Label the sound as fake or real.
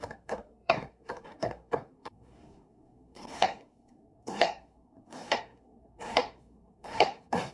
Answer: fake